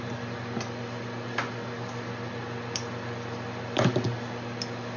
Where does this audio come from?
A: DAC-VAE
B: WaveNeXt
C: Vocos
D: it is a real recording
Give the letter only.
D